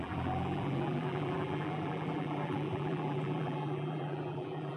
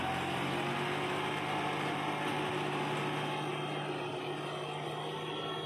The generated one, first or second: first